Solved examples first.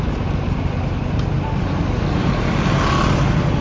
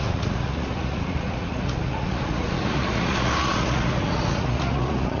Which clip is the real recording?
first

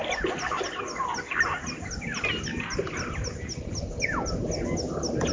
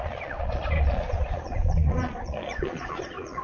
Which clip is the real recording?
first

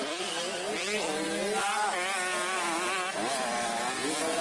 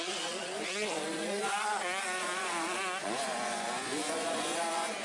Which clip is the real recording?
first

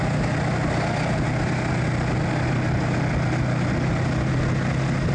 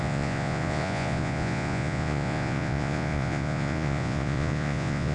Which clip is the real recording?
first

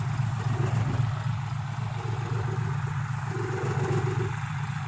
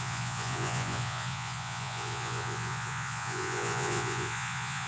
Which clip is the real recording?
first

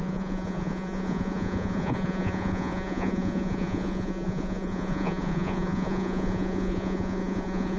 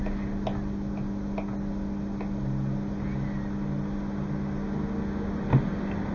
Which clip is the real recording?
second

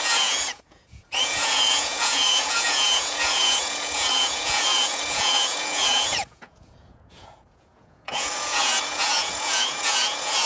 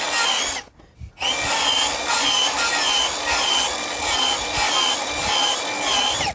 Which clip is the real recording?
second